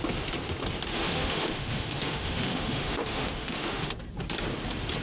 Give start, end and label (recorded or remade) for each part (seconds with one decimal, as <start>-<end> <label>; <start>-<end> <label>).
0.0-0.9 recorded; 0.9-3.9 remade; 3.9-5.0 recorded